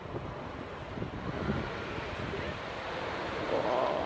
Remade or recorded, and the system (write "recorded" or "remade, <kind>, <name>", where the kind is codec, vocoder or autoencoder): recorded